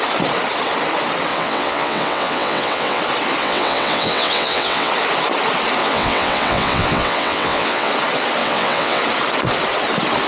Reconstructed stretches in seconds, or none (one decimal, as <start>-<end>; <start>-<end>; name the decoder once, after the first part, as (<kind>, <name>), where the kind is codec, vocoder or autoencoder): 1.3-3.0 (vocoder, WaveNeXt); 3.4-4.9; 5.8-7.9; 8.4-9.0